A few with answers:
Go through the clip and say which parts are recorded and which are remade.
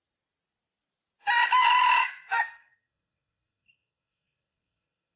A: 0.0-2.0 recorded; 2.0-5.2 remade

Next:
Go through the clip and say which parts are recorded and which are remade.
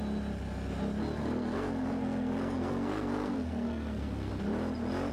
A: 0.0-1.2 recorded; 1.2-4.3 remade; 4.3-5.1 recorded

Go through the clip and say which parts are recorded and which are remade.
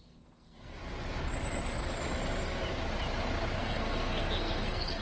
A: 0.0-0.8 remade; 0.8-3.6 recorded; 3.6-5.0 remade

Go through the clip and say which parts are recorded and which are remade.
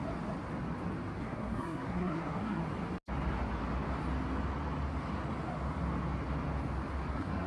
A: 0.0-1.2 recorded; 1.2-2.6 remade; 2.6-7.1 recorded; 7.1-7.5 remade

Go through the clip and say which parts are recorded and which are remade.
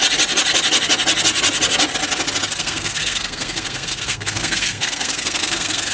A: 0.0-2.6 recorded; 2.6-5.9 remade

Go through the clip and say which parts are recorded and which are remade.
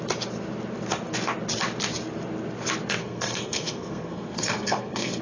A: 0.0-3.0 recorded; 3.0-5.2 remade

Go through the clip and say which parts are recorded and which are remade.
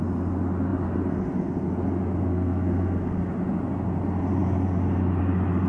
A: 0.0-2.2 recorded; 2.2-3.2 remade; 3.2-5.7 recorded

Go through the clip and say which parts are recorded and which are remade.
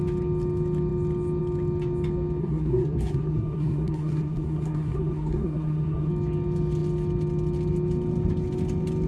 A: 0.0-2.4 recorded; 2.4-6.1 remade; 6.1-9.1 recorded